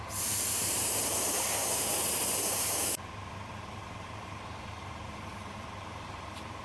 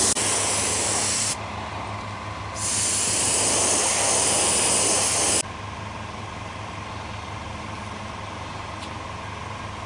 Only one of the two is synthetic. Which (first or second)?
first